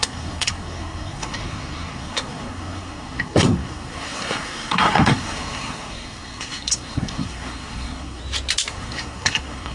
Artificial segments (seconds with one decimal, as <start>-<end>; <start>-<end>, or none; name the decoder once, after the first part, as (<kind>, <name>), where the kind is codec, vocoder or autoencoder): 0.0-8.2 (codec, SNAC); 8.7-9.7